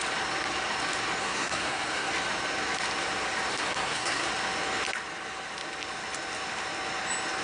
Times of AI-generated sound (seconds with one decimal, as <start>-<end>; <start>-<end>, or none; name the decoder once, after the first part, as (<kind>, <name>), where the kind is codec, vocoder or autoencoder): 1.2-2.1 (codec, SNAC); 3.5-4.3